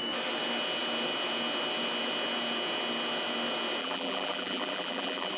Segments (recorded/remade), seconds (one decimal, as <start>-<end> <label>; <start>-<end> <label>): 0.0-3.8 recorded; 3.8-5.4 remade